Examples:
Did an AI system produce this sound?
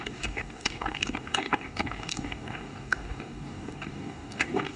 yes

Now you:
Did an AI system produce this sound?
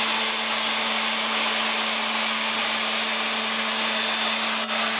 no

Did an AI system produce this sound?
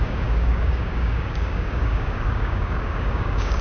yes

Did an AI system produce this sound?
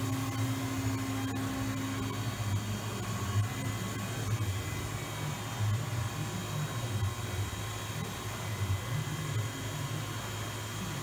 no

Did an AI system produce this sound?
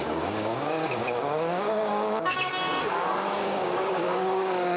yes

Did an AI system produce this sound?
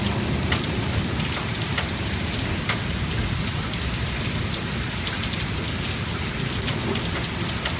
no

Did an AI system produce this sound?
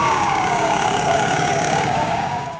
yes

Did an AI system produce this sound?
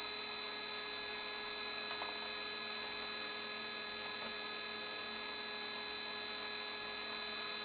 no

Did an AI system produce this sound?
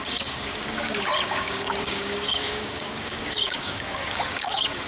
yes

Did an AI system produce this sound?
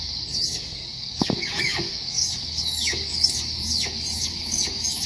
yes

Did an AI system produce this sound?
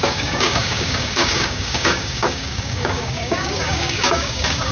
yes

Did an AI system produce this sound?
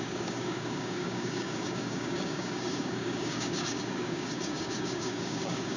yes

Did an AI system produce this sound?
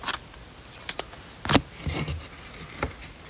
no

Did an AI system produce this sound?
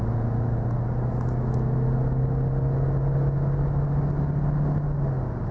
no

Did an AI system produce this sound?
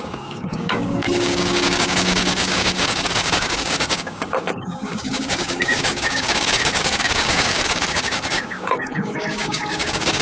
yes